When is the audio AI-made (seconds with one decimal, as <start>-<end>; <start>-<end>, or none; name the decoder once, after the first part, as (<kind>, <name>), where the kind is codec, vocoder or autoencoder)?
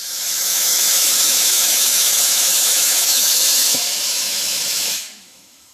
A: 0.0-5.7 (autoencoder, DAC-VAE)